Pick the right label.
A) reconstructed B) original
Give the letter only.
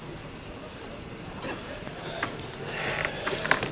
A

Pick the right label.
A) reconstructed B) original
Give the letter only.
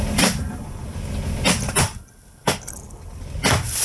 B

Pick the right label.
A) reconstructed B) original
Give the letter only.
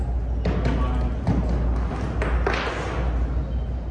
B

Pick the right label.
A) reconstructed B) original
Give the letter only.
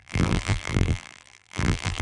A